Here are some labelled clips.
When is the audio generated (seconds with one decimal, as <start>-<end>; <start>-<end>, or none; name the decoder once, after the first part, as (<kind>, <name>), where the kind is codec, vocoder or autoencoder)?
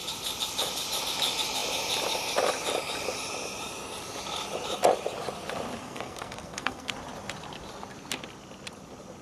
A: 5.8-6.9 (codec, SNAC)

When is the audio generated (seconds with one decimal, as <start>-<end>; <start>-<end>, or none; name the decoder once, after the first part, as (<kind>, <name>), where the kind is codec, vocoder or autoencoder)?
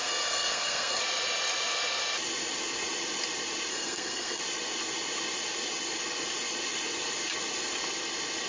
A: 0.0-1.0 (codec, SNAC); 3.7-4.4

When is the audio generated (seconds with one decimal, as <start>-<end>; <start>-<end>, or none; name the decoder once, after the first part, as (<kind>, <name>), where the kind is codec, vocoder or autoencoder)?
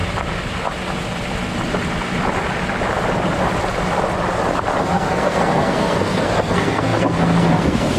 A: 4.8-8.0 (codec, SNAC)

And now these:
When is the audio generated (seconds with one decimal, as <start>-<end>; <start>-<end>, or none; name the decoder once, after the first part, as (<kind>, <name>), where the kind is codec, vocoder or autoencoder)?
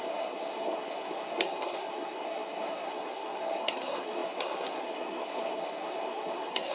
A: 0.0-6.7 (codec, SNAC)